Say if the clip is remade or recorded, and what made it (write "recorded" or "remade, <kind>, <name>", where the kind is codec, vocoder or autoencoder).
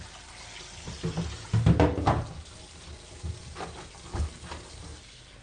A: recorded